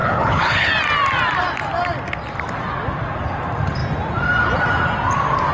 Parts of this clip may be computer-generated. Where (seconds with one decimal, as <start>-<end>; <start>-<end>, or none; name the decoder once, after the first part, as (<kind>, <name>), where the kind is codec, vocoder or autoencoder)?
0.0-0.7 (codec, HILCodec)

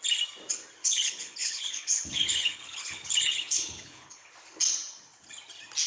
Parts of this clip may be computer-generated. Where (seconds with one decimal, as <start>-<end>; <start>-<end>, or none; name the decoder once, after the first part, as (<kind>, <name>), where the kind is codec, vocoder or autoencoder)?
0.8-4.3 (codec, HILCodec)

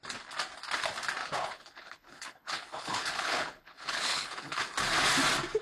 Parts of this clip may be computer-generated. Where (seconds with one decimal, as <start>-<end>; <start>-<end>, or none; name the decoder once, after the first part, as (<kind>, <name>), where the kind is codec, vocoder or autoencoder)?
1.2-4.6 (codec, HILCodec)

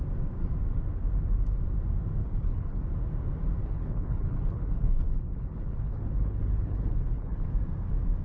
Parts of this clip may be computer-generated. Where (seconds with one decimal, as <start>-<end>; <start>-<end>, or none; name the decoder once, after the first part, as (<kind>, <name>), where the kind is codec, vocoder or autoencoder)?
2.2-2.8 (codec, HILCodec); 3.6-7.4

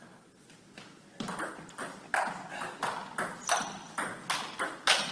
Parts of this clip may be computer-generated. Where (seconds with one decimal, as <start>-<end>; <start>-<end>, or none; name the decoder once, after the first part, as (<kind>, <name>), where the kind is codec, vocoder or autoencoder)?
none

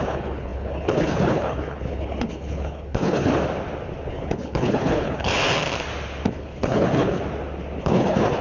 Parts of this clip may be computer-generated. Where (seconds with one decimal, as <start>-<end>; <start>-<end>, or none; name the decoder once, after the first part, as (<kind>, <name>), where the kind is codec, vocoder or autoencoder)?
0.0-3.3 (codec, HILCodec); 4.1-5.3; 6.3-7.2; 7.8-8.4

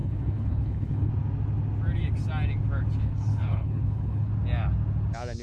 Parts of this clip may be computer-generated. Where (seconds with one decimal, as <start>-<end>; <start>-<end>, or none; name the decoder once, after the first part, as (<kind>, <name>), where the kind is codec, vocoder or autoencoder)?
0.0-1.1 (codec, HILCodec); 3.0-4.3